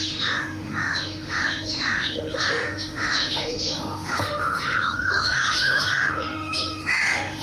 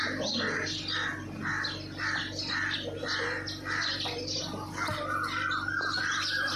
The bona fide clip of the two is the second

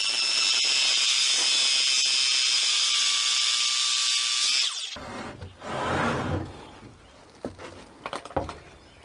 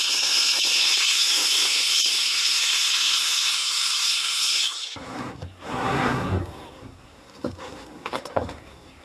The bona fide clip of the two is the first